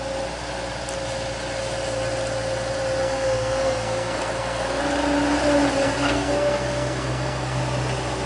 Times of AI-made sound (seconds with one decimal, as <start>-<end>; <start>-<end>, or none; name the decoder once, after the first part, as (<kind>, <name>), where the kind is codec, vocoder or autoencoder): 3.0-4.8 (codec, SNAC); 5.8-7.6